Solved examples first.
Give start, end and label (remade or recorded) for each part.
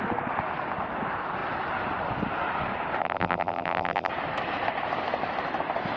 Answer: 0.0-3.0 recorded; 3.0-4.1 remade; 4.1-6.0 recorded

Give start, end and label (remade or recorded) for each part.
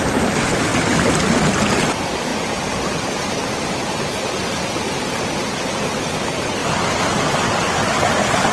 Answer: 0.0-8.5 recorded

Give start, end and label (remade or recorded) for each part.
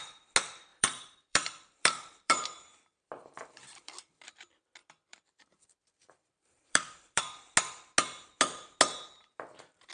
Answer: 0.0-0.7 recorded; 0.7-4.1 remade; 4.1-4.8 recorded; 4.8-7.2 remade; 7.2-9.9 recorded